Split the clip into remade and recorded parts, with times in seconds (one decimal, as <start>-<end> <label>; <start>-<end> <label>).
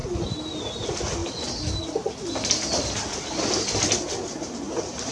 0.0-5.1 recorded